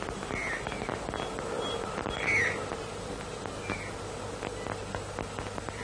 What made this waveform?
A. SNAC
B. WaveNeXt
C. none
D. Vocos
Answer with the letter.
C